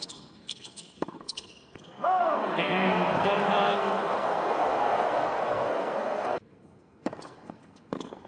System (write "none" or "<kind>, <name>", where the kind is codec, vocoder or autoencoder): codec, SNAC